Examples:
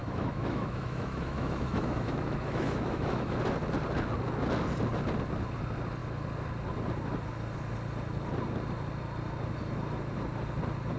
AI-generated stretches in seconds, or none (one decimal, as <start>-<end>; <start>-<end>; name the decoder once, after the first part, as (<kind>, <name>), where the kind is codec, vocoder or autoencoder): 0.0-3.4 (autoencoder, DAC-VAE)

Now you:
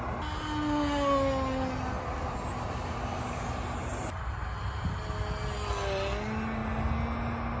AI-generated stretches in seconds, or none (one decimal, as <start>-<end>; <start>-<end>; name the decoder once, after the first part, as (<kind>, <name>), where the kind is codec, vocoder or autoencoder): none

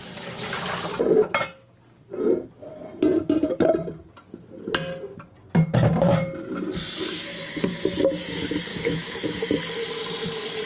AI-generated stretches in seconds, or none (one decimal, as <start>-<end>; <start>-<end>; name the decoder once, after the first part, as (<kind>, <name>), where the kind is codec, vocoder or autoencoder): 8.7-9.6 (autoencoder, DAC-VAE)

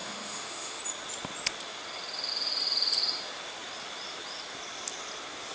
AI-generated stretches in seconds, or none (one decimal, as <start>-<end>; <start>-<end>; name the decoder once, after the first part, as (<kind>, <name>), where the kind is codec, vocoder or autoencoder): 0.0-0.8 (autoencoder, DAC-VAE)

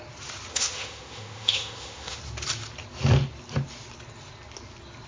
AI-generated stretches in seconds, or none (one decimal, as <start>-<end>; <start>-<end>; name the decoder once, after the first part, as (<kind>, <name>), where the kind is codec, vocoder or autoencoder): 0.5-2.2 (autoencoder, DAC-VAE)